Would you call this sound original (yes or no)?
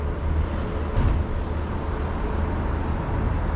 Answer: yes